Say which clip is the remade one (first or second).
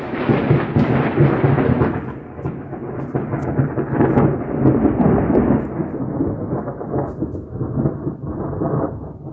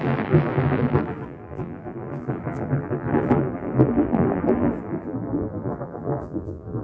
second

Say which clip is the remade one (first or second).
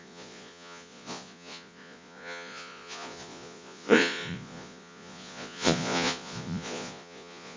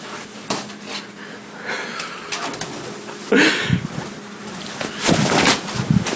first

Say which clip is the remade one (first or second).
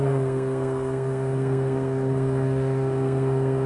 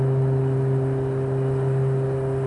first